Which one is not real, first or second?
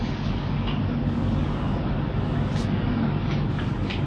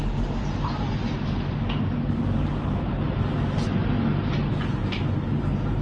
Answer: first